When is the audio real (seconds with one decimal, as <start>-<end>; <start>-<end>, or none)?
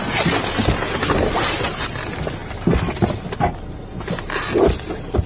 0.0-5.3